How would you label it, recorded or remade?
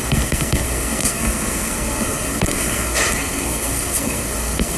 remade